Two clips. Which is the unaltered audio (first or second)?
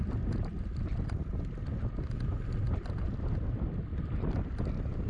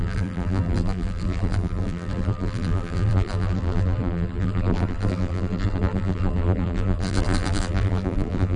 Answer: first